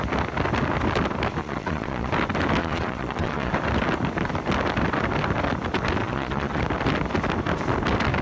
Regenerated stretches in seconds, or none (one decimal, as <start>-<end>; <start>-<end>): 1.4-2.1; 2.6-3.5; 6.0-6.6